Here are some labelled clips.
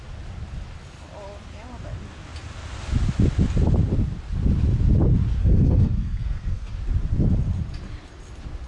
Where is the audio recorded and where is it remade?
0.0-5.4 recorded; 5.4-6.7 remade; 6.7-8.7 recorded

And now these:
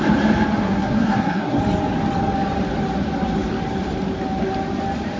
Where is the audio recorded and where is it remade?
0.0-0.6 recorded; 0.6-1.6 remade; 1.6-5.2 recorded

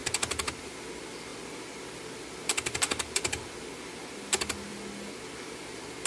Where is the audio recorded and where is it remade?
0.0-6.1 recorded

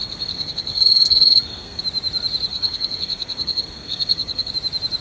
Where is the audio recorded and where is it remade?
0.0-1.8 remade; 1.8-2.5 recorded; 2.5-4.5 remade; 4.5-5.0 recorded